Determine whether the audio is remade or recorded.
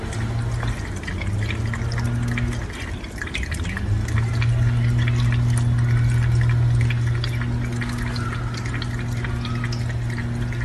recorded